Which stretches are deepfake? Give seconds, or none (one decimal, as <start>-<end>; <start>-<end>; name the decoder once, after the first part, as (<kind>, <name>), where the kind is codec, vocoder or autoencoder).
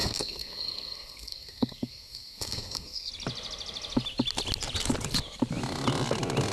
0.0-3.1 (codec, SNAC)